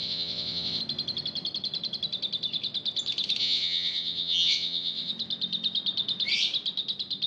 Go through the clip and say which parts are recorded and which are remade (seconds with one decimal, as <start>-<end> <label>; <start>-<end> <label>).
0.0-0.8 remade; 0.8-3.4 recorded; 3.4-5.1 remade; 5.1-7.3 recorded